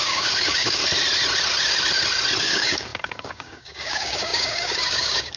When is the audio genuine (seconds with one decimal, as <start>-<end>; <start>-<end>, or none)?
0.8-2.4